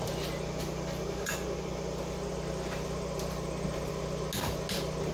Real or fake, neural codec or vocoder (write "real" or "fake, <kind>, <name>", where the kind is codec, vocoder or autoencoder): real